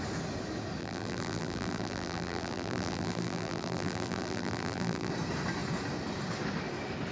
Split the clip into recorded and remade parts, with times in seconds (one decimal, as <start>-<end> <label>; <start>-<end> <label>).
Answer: 0.0-0.8 recorded; 0.8-5.1 remade; 5.1-7.1 recorded